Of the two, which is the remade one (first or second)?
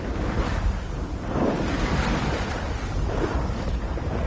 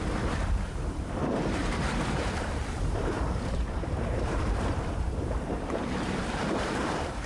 second